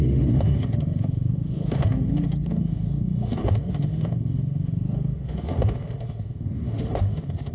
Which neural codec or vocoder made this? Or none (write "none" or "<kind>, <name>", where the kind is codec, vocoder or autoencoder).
autoencoder, DAC-VAE